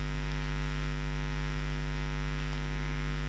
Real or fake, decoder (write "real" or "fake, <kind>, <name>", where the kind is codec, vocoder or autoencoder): real